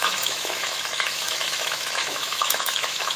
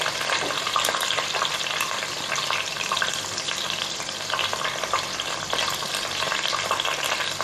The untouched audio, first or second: second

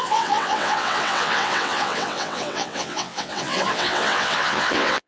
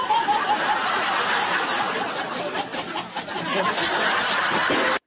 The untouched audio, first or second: second